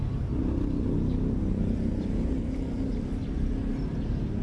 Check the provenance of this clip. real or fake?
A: real